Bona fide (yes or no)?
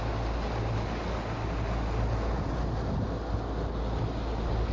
yes